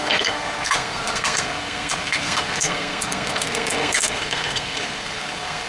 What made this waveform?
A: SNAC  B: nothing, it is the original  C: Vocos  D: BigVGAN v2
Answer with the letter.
A